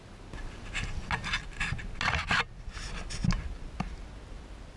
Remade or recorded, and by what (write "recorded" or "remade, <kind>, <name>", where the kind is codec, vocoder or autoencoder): recorded